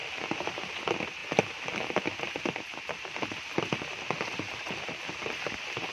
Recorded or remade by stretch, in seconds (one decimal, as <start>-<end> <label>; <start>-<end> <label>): 0.0-5.9 recorded